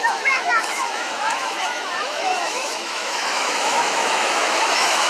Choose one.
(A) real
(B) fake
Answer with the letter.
B